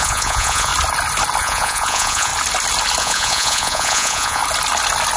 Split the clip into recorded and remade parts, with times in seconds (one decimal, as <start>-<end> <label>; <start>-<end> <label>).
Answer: 0.0-0.7 remade; 0.7-1.4 recorded; 1.4-2.3 remade; 2.3-3.0 recorded; 3.0-4.4 remade; 4.4-5.2 recorded